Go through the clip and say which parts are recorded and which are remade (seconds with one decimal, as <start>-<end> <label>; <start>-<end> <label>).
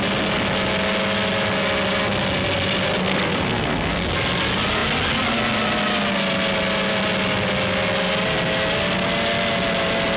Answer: 0.0-3.0 recorded; 3.0-4.1 remade; 4.1-10.2 recorded